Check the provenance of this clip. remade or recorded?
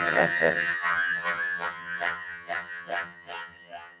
remade